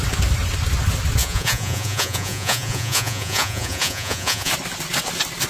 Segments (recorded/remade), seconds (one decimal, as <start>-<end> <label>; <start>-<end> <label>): 0.0-1.2 recorded; 1.2-4.5 remade; 4.5-5.5 recorded